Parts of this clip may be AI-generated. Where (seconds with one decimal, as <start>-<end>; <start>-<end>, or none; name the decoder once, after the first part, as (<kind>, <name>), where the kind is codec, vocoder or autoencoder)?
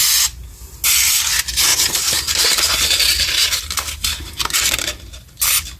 none